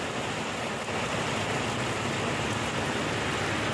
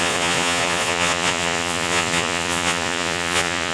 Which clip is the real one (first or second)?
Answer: first